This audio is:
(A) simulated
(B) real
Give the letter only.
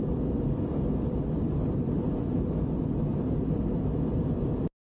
B